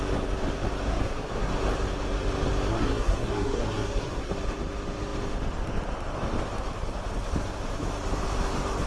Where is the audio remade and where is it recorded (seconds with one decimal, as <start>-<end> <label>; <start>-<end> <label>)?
0.0-0.9 recorded; 0.9-1.5 remade; 1.5-2.7 recorded; 2.7-4.3 remade; 4.3-8.9 recorded